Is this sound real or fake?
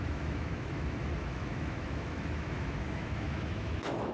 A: fake